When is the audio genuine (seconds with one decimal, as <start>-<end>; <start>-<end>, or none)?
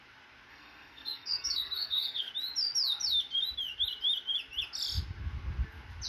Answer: 0.0-0.5; 2.3-6.1